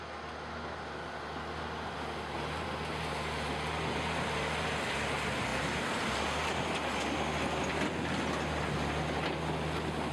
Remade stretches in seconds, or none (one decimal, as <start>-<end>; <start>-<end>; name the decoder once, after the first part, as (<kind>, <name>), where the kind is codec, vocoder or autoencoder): none